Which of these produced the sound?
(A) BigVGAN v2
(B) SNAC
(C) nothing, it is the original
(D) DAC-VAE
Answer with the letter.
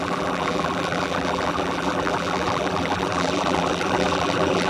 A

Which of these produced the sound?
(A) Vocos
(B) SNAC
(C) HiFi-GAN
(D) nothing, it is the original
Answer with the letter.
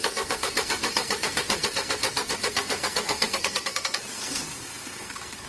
B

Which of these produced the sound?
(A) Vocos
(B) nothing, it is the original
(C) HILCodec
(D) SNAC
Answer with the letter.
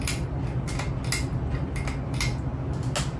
B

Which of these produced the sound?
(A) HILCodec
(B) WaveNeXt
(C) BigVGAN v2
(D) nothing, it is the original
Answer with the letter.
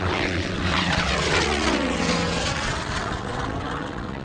B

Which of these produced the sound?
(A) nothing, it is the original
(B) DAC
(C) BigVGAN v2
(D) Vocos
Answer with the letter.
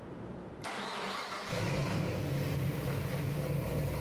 C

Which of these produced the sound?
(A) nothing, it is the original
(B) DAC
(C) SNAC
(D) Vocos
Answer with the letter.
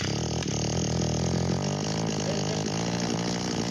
A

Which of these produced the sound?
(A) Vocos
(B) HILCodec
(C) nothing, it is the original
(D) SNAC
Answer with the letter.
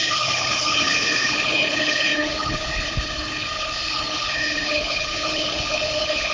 B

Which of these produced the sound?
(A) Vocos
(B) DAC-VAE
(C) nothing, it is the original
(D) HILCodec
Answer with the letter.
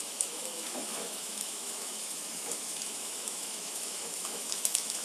B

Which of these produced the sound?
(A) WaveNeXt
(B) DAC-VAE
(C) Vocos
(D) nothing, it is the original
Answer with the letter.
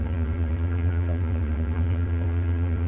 A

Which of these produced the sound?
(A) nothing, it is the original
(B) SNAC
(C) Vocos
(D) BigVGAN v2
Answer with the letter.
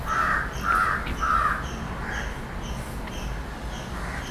A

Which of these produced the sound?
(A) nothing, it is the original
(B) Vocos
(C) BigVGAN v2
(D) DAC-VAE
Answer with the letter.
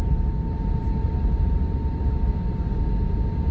C